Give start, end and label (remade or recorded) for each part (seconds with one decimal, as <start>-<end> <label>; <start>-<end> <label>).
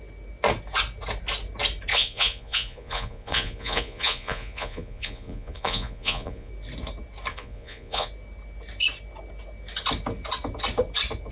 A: 0.0-1.9 recorded; 1.9-6.5 remade; 6.5-7.3 recorded; 7.3-8.1 remade; 8.1-11.3 recorded